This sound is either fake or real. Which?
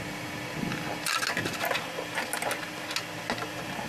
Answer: real